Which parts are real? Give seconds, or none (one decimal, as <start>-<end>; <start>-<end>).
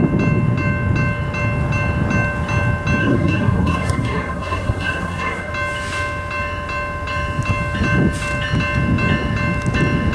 0.0-3.0; 5.5-10.1